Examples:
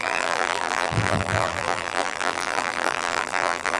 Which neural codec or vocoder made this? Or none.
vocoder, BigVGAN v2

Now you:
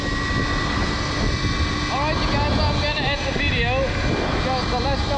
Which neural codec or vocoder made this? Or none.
none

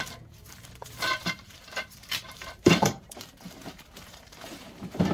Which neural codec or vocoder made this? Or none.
vocoder, BigVGAN v2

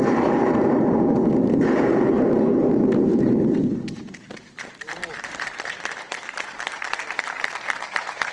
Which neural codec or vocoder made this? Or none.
vocoder, BigVGAN v2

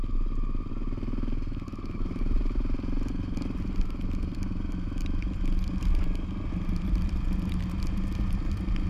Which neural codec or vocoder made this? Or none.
none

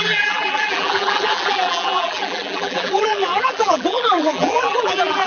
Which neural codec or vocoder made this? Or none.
vocoder, BigVGAN v2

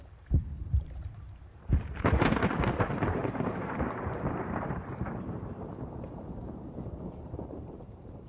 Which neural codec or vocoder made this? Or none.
vocoder, BigVGAN v2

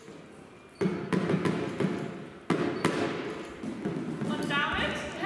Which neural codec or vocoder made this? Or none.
none